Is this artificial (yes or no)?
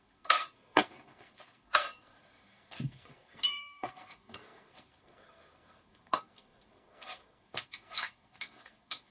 yes